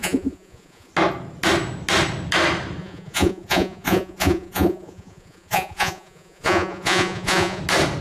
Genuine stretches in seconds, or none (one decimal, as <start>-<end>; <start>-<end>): 0.9-2.8; 7.6-8.0